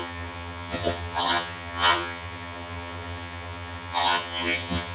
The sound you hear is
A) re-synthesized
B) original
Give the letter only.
A